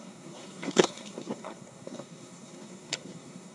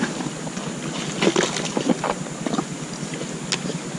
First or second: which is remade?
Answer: first